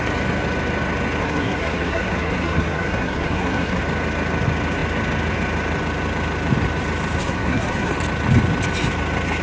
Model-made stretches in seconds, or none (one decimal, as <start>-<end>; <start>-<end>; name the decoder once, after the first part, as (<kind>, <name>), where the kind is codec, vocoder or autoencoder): 1.2-3.8 (codec, SNAC); 7.2-7.9